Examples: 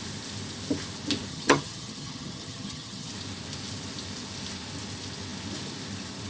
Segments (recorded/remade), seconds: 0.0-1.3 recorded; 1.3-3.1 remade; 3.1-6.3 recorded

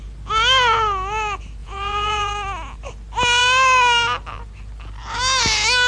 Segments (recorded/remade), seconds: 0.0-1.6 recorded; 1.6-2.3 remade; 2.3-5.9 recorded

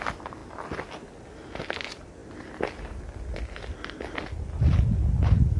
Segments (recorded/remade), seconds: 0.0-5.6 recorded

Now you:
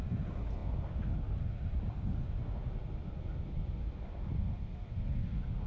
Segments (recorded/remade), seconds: 0.0-5.7 recorded